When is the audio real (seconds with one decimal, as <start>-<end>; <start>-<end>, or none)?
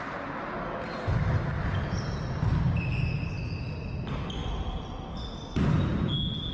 0.0-4.4; 5.1-6.5